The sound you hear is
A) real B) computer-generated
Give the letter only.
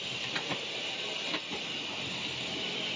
A